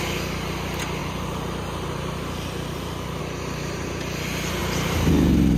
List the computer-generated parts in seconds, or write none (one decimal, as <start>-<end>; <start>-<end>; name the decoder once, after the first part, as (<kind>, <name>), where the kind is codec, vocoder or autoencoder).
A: 1.0-3.2 (vocoder, BigVGAN v2); 4.6-5.6

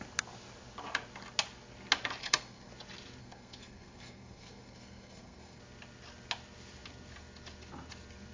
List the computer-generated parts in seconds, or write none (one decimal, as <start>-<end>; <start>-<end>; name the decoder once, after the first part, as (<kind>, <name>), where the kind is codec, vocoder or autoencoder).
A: 2.2-2.7 (codec, SNAC); 3.2-5.6

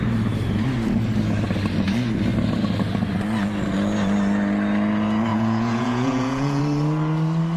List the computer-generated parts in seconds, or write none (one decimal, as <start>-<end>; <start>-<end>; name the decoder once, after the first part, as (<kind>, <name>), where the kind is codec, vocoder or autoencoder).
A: 5.3-6.6 (vocoder, Vocos)

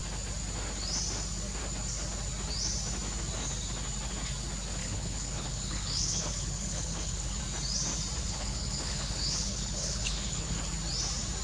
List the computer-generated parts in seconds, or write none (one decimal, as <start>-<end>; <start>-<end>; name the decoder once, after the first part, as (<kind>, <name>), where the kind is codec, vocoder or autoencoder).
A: 4.8-7.4 (codec, HILCodec); 8.2-10.6

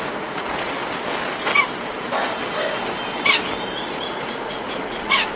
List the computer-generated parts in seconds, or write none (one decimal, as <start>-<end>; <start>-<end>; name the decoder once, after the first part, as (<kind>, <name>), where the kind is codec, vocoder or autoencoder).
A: 0.0-0.8 (vocoder, Vocos); 4.0-5.4